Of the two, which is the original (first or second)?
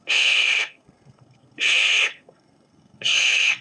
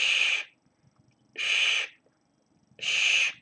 second